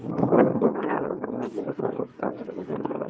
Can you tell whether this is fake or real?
fake